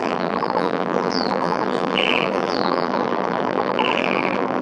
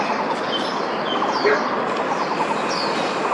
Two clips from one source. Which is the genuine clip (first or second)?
second